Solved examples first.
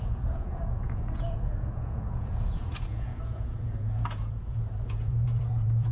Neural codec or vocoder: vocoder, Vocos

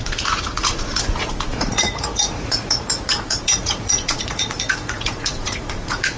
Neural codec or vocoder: vocoder, Vocos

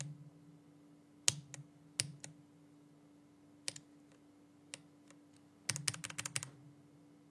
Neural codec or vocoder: none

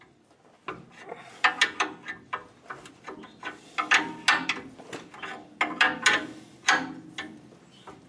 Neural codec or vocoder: none